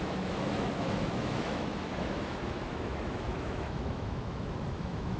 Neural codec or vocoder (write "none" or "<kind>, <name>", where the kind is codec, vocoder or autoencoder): autoencoder, DAC-VAE